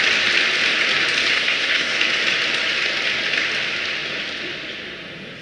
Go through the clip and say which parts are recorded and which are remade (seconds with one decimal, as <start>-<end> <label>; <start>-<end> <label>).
0.0-1.3 recorded; 1.3-2.0 remade; 2.0-5.4 recorded